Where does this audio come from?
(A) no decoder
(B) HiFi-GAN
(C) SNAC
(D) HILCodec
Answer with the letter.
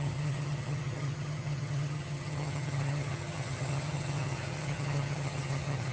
B